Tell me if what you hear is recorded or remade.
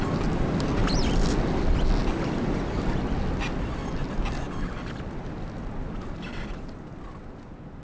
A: recorded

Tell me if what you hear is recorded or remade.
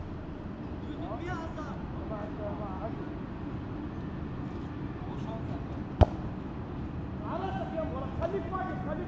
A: recorded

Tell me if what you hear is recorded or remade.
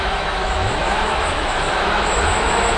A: remade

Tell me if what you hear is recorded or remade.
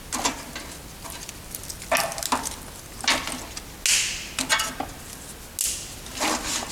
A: recorded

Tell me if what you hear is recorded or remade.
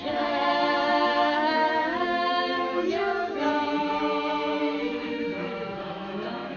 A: remade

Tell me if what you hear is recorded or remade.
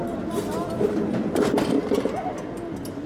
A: recorded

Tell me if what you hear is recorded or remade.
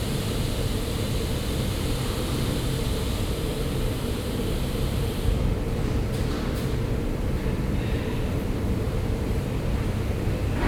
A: remade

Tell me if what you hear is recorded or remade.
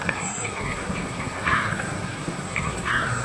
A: remade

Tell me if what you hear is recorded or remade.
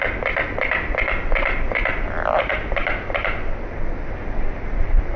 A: recorded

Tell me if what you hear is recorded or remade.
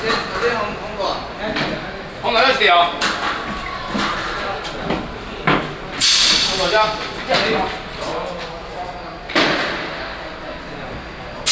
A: recorded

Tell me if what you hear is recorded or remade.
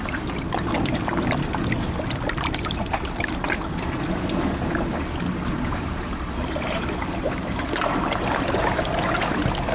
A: recorded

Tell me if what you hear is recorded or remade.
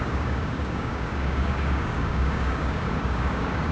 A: remade